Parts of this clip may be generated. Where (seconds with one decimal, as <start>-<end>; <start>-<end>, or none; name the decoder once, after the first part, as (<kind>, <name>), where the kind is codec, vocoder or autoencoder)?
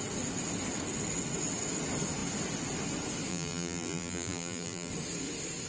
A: 3.3-4.9 (vocoder, BigVGAN v2)